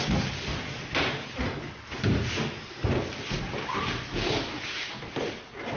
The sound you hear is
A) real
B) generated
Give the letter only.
A